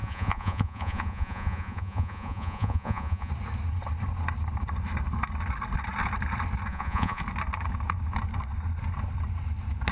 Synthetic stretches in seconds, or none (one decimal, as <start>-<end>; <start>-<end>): 0.0-3.3; 6.7-7.2